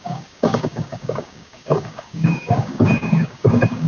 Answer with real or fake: fake